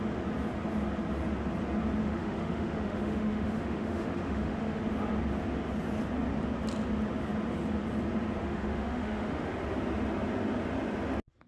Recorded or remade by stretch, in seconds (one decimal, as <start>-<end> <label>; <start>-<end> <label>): 0.0-2.0 recorded; 2.0-4.8 remade; 4.8-8.4 recorded; 8.4-9.5 remade; 9.5-11.5 recorded